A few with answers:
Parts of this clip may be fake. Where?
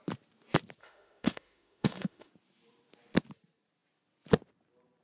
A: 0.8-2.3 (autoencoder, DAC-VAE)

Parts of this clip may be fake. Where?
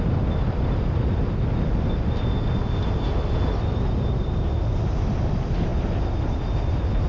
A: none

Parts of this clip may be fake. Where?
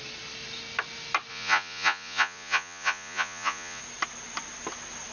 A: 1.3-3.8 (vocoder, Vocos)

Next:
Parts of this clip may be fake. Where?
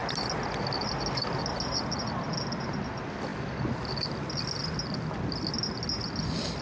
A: none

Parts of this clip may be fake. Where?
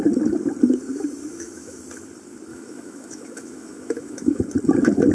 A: 1.2-1.8 (autoencoder, DAC-VAE); 2.5-4.4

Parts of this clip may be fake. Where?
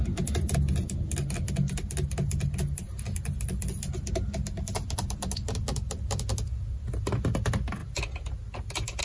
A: none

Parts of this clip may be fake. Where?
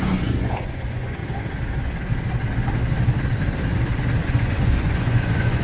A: 0.0-1.2 (vocoder, Vocos); 4.2-5.6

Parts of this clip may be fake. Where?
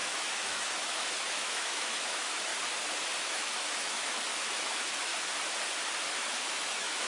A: 0.0-2.5 (autoencoder, DAC-VAE); 3.2-5.1; 6.1-7.1